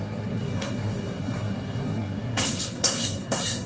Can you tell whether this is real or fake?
fake